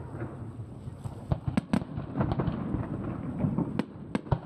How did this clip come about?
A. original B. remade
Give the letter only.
A